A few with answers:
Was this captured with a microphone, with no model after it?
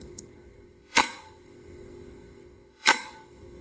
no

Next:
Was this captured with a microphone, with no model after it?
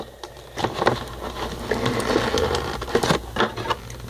yes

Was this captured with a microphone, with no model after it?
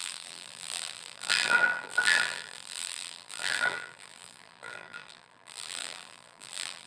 no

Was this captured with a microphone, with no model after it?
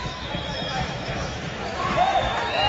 no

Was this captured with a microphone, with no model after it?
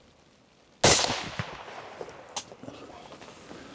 yes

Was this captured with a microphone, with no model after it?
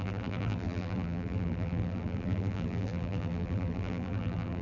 no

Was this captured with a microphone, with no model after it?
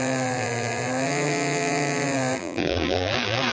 no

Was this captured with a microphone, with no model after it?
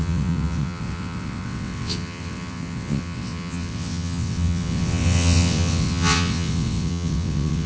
no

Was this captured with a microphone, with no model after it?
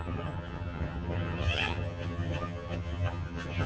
no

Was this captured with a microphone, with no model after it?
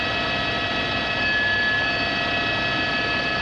yes